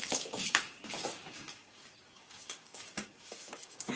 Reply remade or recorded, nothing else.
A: remade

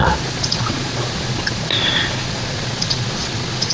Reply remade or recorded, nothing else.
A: remade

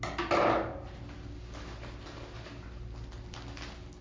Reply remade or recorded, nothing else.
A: recorded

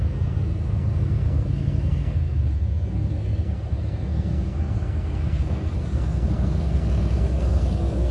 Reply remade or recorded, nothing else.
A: remade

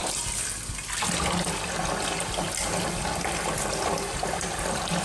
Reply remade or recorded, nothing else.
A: recorded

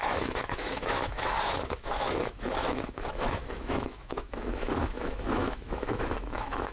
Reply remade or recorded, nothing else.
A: remade